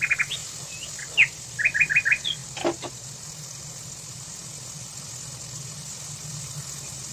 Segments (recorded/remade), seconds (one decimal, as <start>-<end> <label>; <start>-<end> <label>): 0.0-7.1 recorded